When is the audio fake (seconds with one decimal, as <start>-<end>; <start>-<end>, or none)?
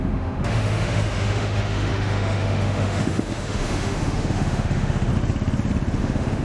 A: 0.0-5.1; 6.0-6.4